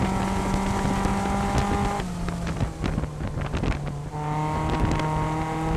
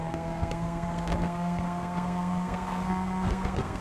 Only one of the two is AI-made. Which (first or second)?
second